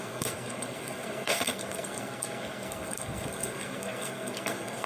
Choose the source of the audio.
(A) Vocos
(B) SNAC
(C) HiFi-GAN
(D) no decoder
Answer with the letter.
B